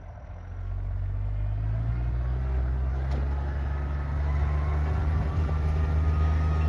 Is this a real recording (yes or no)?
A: yes